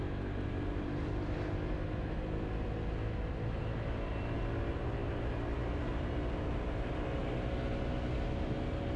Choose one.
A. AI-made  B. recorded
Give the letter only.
B